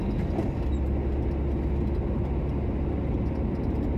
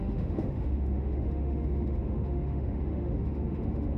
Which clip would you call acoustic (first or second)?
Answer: first